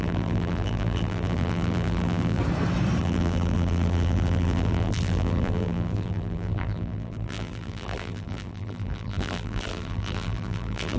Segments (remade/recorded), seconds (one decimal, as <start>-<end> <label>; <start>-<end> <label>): 0.0-2.4 remade; 2.4-3.0 recorded; 3.0-11.0 remade